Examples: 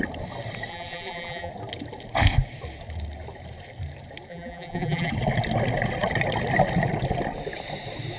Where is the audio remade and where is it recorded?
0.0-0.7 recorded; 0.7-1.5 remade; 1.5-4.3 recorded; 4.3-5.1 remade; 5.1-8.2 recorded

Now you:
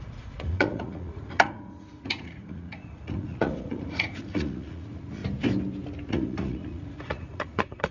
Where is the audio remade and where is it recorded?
0.0-5.2 remade; 5.2-6.1 recorded; 6.1-7.9 remade

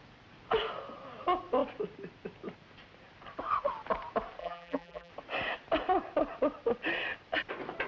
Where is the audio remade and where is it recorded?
0.0-4.4 recorded; 4.4-5.1 remade; 5.1-7.9 recorded

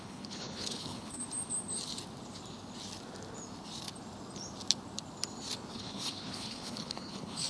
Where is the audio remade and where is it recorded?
0.0-1.2 remade; 1.2-5.7 recorded; 5.7-7.5 remade